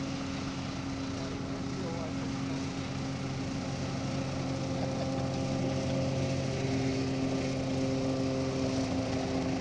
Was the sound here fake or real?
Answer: real